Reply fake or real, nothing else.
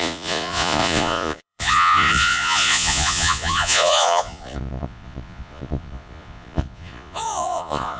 fake